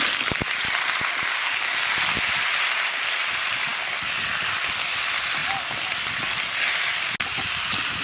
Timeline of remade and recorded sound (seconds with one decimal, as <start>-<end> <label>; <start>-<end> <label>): 0.0-1.4 remade; 1.4-2.1 recorded; 2.1-5.4 remade; 5.4-8.0 recorded